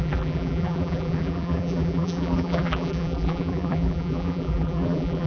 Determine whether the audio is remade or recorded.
remade